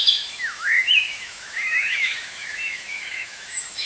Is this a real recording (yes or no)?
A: no